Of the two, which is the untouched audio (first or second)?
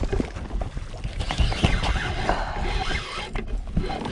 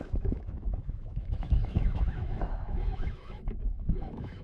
first